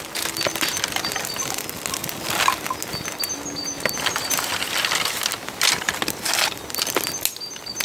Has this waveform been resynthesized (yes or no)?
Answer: no